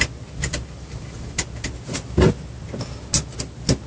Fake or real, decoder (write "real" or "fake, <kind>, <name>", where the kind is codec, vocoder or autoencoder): real